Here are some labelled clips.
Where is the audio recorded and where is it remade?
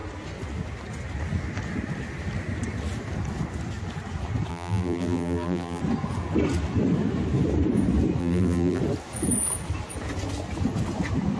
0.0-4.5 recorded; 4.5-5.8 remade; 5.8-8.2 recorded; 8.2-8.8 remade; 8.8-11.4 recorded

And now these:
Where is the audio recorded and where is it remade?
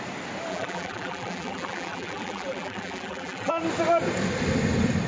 0.0-0.5 recorded; 0.5-3.5 remade; 3.5-5.1 recorded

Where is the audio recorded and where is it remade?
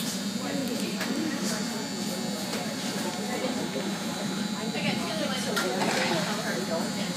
0.0-0.6 recorded; 0.6-1.5 remade; 1.5-2.5 recorded; 2.5-5.9 remade; 5.9-7.2 recorded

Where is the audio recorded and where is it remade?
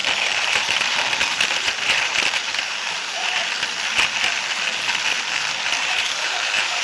0.0-3.4 remade; 3.4-5.8 recorded; 5.8-6.8 remade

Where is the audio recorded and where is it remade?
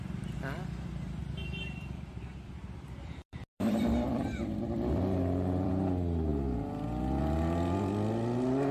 0.0-1.2 recorded; 1.2-5.7 remade; 5.7-8.7 recorded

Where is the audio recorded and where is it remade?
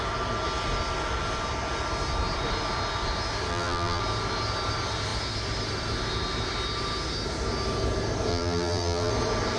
0.0-3.5 recorded; 3.5-4.0 remade; 4.0-8.3 recorded; 8.3-9.1 remade; 9.1-9.6 recorded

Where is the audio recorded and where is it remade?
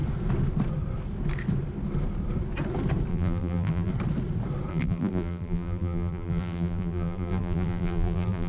0.0-3.1 recorded; 3.1-3.9 remade; 3.9-4.7 recorded; 4.7-8.5 remade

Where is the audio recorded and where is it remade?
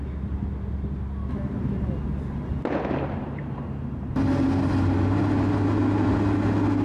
0.0-3.2 recorded; 3.2-4.1 remade; 4.1-6.8 recorded